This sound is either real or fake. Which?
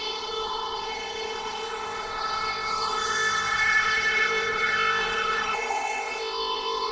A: fake